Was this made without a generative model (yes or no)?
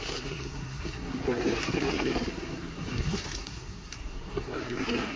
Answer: no